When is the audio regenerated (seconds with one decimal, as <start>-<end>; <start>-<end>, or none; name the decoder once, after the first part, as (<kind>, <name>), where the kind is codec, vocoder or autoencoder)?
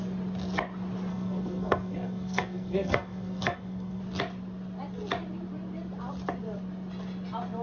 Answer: 1.1-4.0 (codec, SNAC)